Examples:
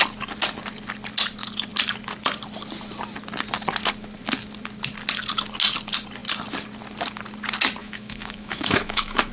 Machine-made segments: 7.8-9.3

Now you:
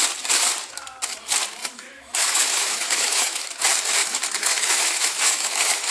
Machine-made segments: 1.6-3.5; 4.0-5.9

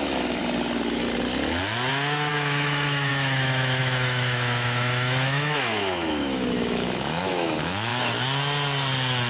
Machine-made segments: 0.0-0.4; 1.9-7.9

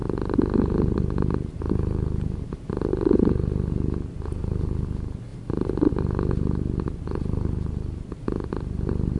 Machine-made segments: none

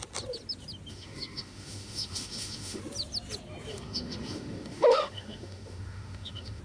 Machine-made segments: 0.9-2.8; 3.7-6.6